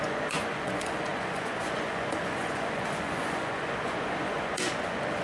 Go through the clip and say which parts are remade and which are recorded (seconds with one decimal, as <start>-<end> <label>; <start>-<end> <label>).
0.0-5.2 remade